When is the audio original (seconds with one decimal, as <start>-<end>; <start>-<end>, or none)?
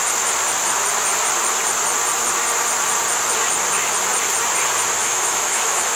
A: 0.0-5.0